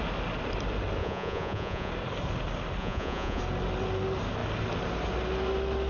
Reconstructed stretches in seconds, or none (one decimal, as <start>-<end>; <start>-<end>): 1.0-1.9; 2.8-3.4